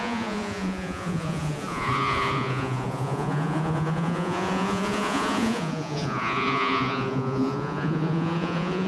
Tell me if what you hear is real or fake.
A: fake